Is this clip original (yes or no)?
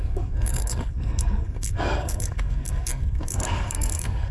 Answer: no